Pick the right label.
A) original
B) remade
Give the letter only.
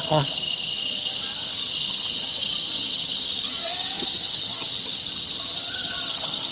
B